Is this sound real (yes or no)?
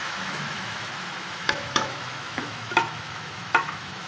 no